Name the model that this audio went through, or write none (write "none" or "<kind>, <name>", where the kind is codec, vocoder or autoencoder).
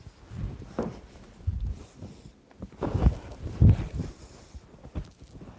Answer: none